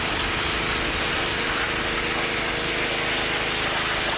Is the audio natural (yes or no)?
yes